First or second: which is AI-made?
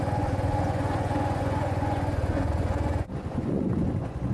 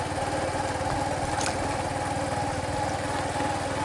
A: first